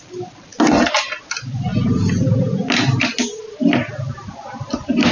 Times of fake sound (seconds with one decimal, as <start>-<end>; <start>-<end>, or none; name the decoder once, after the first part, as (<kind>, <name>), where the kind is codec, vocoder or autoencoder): none